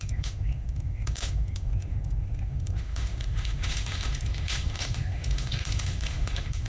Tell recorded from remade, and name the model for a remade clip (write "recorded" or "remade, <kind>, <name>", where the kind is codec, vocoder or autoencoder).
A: remade, autoencoder, DAC-VAE